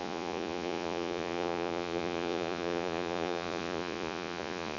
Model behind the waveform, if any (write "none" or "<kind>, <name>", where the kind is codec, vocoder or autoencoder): vocoder, Vocos